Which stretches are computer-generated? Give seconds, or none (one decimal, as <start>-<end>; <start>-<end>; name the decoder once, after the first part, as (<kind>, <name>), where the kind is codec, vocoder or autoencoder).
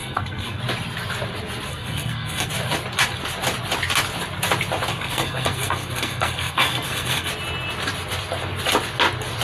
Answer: 0.0-0.6 (codec, SNAC); 1.7-2.5; 4.9-7.3